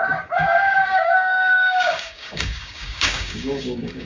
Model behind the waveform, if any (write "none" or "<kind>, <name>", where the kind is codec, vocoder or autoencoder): codec, DAC